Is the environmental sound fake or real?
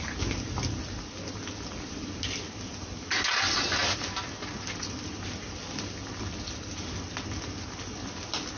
real